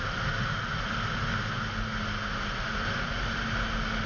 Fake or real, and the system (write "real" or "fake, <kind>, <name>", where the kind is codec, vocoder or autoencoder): real